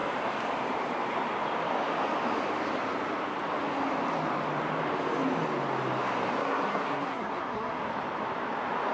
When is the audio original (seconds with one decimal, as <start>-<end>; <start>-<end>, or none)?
0.0-6.4; 7.8-8.9